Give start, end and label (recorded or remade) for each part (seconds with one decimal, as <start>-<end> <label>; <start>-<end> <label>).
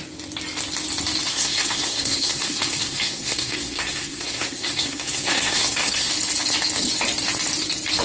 0.0-1.3 recorded; 1.3-6.1 remade; 6.1-8.0 recorded